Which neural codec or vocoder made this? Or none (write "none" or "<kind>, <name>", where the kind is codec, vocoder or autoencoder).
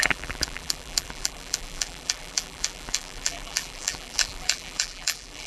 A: vocoder, BigVGAN v2